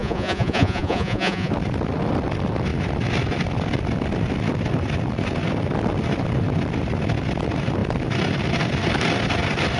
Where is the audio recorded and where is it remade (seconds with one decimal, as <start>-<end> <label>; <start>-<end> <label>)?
0.0-1.5 remade; 1.5-9.8 recorded